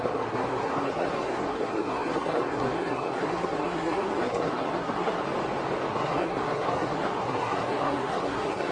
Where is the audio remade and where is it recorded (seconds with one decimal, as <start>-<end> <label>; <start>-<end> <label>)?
0.0-5.2 remade; 5.2-5.9 recorded; 5.9-8.7 remade